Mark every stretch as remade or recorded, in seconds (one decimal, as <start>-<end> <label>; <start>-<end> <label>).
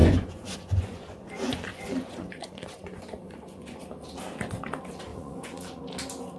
0.0-3.8 remade; 3.8-5.1 recorded; 5.1-5.8 remade; 5.8-6.4 recorded